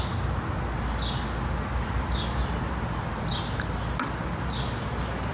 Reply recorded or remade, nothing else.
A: recorded